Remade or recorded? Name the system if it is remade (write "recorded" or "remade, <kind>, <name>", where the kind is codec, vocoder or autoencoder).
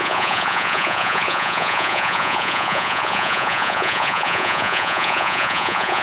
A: remade, vocoder, Vocos